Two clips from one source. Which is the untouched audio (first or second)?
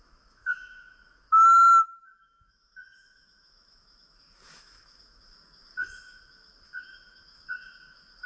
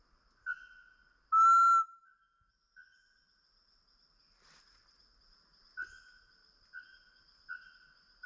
second